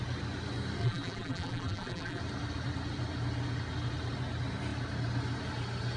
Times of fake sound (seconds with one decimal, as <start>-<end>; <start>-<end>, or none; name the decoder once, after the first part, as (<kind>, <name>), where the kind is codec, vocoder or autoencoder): 0.8-2.2 (vocoder, BigVGAN v2)